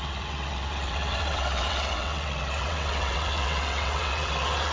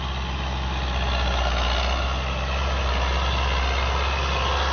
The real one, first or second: second